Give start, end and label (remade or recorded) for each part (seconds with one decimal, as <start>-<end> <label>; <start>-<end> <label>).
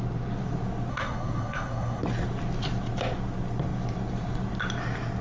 0.0-0.9 recorded; 0.9-2.0 remade; 2.0-5.2 recorded